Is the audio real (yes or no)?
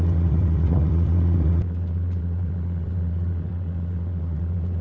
no